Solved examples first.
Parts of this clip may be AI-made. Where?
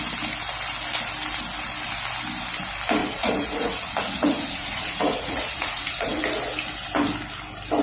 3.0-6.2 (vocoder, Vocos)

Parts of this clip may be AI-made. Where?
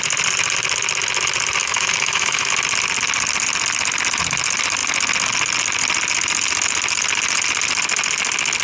1.6-2.5 (autoencoder, DAC-VAE)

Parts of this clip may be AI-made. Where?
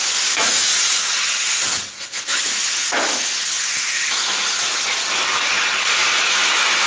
0.0-0.7 (autoencoder, DAC-VAE); 2.2-4.6; 6.2-6.9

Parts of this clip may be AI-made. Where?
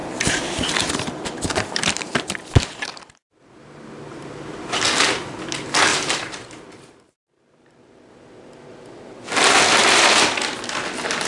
0.0-2.3 (vocoder, BigVGAN v2); 5.9-8.1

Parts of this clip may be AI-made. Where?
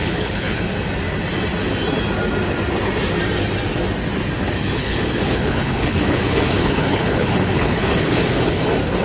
0.0-0.6 (codec, HILCodec); 4.6-8.6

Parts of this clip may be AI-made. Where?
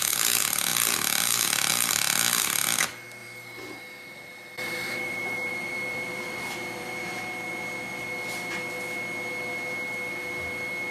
3.2-7.2 (vocoder, BigVGAN v2)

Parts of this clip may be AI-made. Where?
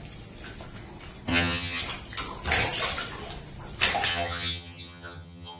1.3-1.8 (vocoder, HiFi-GAN); 4.1-5.6